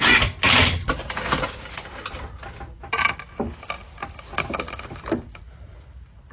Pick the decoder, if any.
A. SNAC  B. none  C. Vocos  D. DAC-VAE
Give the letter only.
B